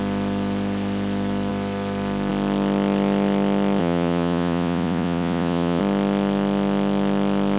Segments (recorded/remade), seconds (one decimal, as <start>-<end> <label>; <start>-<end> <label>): 0.0-3.8 recorded; 3.8-5.8 remade; 5.8-7.6 recorded